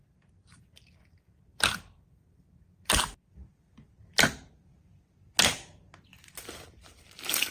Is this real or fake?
real